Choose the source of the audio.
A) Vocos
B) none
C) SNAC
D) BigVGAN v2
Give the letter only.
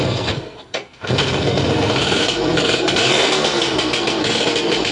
C